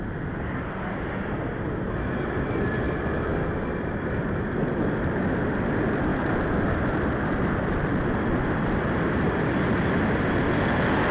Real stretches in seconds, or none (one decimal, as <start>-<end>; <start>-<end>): 0.0-6.1; 10.3-11.1